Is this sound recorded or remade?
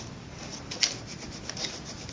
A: recorded